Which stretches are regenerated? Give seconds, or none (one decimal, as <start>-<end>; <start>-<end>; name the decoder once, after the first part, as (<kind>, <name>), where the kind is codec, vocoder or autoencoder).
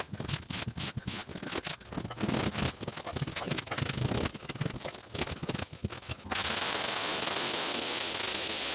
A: 0.0-8.7 (vocoder, BigVGAN v2)